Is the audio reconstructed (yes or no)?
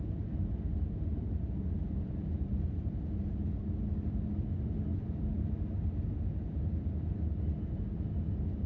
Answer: no